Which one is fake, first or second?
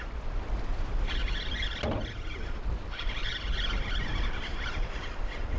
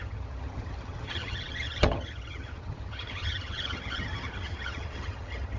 second